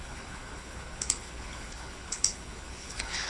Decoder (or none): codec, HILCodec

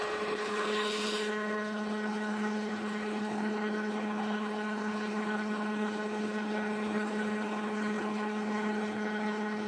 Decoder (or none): codec, HILCodec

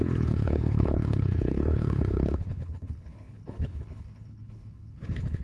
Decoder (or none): codec, HILCodec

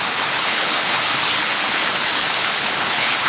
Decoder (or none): codec, HILCodec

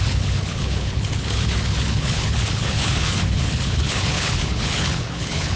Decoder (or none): codec, HILCodec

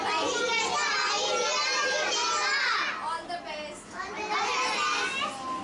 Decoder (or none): none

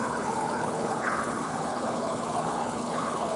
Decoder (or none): codec, HILCodec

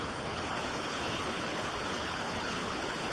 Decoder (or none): codec, HILCodec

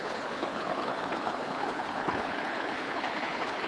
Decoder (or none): codec, HILCodec